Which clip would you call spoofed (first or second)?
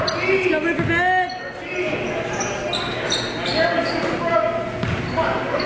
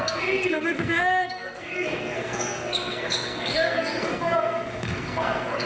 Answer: second